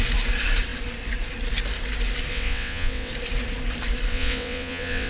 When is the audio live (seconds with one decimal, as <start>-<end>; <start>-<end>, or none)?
0.0-2.3; 3.1-4.1

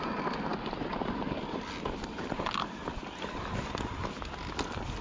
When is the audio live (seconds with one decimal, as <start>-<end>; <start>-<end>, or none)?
0.0-5.0